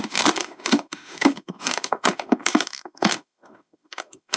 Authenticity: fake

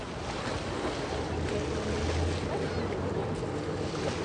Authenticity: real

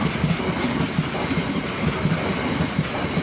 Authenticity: real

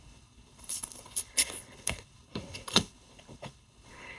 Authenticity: fake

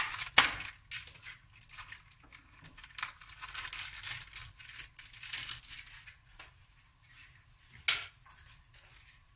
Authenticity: real